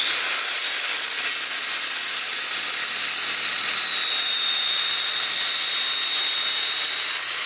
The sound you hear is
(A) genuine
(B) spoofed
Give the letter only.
A